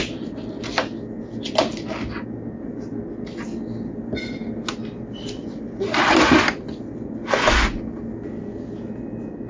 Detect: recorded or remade recorded